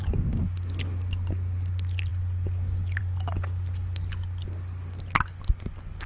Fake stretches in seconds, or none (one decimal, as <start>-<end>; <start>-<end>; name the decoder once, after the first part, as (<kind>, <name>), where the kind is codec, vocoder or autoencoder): none